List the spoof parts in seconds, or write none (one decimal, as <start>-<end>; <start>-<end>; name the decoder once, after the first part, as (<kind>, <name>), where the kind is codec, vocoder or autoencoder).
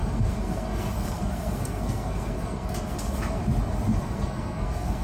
0.0-3.4 (codec, SNAC); 4.0-5.0